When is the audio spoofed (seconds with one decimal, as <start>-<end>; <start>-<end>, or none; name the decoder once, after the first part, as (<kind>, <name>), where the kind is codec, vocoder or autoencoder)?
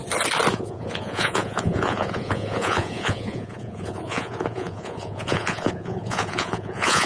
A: 0.5-7.1 (vocoder, Vocos)